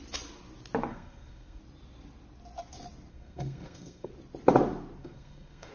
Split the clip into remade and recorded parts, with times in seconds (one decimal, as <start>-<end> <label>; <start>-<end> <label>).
0.0-0.9 recorded; 0.9-1.6 remade; 1.6-3.1 recorded; 3.1-4.1 remade; 4.1-5.0 recorded; 5.0-5.7 remade